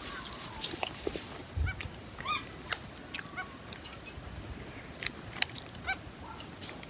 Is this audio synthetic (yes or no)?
no